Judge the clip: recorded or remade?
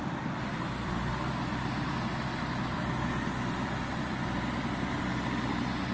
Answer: recorded